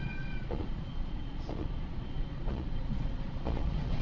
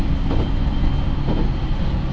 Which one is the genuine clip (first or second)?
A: second